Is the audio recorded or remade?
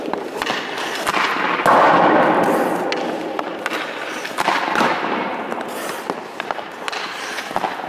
recorded